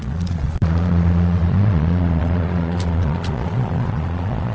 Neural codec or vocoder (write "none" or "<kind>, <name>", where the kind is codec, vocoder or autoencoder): vocoder, Vocos